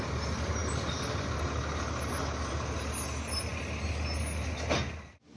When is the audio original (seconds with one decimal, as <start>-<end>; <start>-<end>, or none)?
0.0-5.4